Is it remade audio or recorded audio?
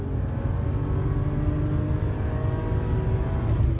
recorded